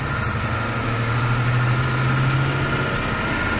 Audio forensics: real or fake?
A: real